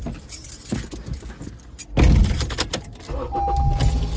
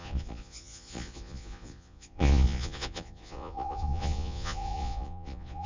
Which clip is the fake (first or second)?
second